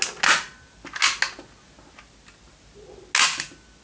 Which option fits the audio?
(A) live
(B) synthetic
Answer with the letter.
A